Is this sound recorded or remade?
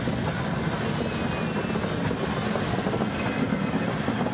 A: recorded